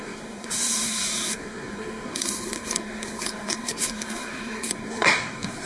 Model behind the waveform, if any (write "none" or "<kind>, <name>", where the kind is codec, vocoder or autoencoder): codec, SNAC